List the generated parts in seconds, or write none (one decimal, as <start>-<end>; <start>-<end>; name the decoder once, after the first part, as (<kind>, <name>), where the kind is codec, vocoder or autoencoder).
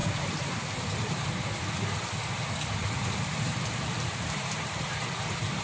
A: 2.8-5.0 (vocoder, BigVGAN v2)